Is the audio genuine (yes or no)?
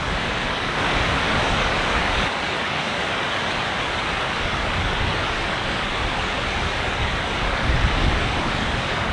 no